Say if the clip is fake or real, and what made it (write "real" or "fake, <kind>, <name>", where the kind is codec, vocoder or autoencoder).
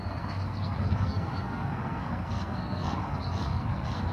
fake, codec, SNAC